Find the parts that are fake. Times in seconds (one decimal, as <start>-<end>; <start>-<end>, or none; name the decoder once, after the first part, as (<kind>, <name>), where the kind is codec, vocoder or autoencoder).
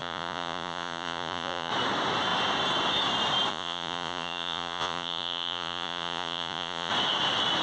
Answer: 0.0-1.7 (vocoder, Vocos); 3.5-6.9